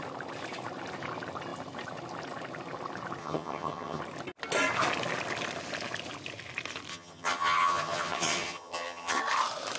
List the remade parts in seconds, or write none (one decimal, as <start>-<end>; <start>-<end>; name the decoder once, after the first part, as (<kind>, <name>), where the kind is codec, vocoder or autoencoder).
3.2-4.0 (vocoder, HiFi-GAN); 6.9-9.2